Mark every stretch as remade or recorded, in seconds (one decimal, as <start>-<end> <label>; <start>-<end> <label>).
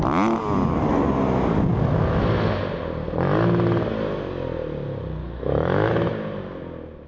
0.0-5.2 recorded; 5.2-6.1 remade; 6.1-7.1 recorded